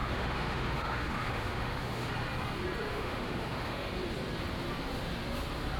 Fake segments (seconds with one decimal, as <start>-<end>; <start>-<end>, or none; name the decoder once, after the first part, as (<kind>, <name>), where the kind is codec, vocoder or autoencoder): 0.0-2.1 (autoencoder, DAC-VAE); 2.9-3.9